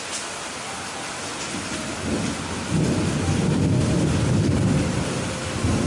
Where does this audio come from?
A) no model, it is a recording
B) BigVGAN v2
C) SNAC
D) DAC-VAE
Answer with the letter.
A